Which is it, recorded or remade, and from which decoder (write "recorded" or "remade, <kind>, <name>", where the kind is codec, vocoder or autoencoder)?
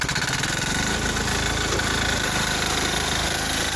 recorded